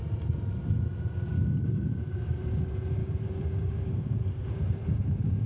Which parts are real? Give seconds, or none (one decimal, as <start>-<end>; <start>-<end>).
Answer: 0.0-1.3; 2.6-3.0